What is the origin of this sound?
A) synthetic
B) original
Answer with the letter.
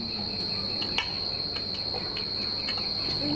B